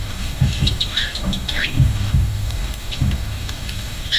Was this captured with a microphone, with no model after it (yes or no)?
no